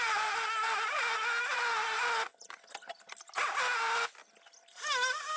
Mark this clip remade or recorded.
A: recorded